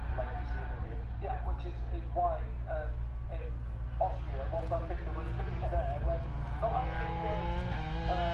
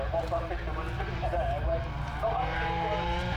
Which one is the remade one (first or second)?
second